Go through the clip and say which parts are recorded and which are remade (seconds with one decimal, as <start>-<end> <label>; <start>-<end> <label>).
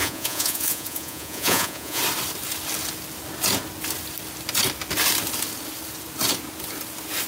0.0-2.0 remade; 2.0-7.3 recorded